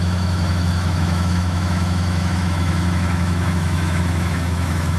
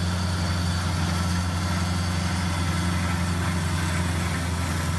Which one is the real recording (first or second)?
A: second